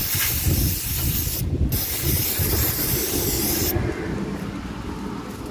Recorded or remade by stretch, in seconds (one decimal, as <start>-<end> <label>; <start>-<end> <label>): 0.0-5.5 recorded